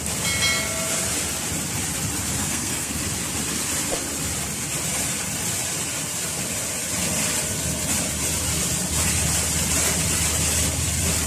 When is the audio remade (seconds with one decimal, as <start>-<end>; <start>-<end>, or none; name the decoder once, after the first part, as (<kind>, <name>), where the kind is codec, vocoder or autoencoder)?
2.4-3.0 (codec, SNAC)

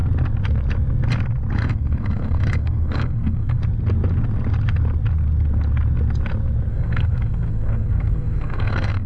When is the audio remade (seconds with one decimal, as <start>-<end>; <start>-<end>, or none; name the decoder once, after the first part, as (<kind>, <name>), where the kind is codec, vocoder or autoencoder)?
1.6-3.6 (codec, SNAC); 6.7-9.1